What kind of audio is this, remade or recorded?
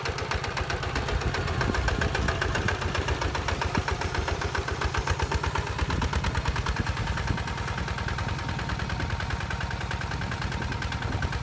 recorded